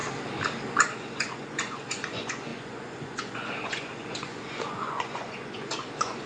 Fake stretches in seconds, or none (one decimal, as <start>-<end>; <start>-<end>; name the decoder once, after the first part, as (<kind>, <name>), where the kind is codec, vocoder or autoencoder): 0.8-6.3 (vocoder, Vocos)